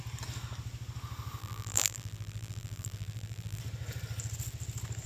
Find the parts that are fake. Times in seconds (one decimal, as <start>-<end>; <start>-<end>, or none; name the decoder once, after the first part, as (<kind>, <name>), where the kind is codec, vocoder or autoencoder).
1.4-3.6 (vocoder, BigVGAN v2)